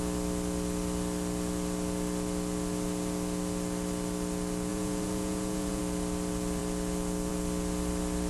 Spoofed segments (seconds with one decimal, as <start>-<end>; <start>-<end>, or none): 4.7-5.8